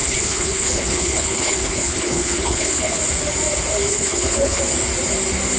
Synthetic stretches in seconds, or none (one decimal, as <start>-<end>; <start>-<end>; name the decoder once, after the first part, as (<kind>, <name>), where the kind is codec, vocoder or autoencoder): 0.0-3.0 (codec, HILCodec); 3.9-4.6